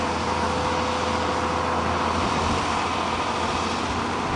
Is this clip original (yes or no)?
yes